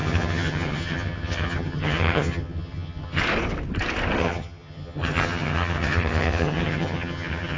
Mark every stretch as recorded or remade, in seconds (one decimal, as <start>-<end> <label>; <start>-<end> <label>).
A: 0.0-3.2 remade; 3.2-4.2 recorded; 4.2-7.6 remade